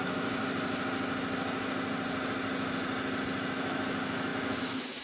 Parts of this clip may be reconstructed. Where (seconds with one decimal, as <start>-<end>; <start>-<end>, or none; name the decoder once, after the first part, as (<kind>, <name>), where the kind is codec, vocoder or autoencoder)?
0.0-0.4 (autoencoder, DAC-VAE); 3.4-5.0